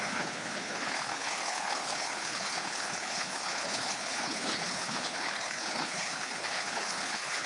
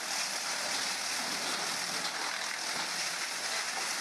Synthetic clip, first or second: first